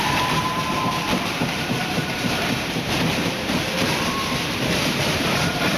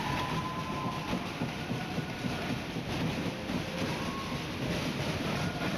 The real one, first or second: second